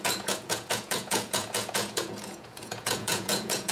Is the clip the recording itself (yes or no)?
no